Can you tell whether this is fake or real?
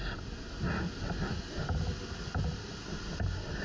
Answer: real